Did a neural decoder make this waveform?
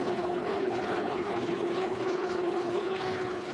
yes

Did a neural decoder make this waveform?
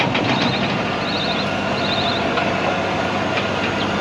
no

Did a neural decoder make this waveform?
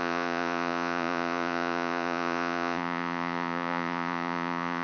yes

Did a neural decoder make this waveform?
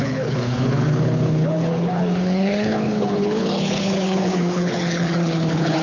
yes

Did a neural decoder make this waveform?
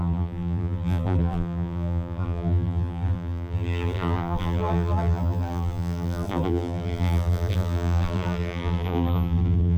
yes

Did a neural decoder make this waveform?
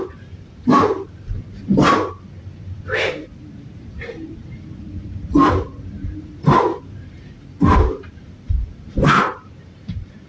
yes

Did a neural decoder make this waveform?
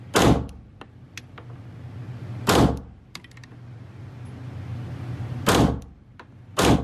no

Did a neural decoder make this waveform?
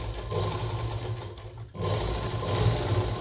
no